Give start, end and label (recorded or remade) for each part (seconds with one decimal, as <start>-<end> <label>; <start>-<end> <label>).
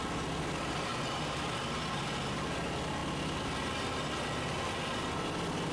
0.0-5.7 recorded